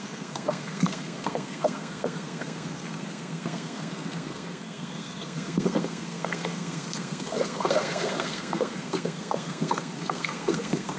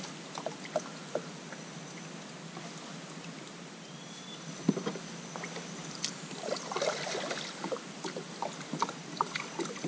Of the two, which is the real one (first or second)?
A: second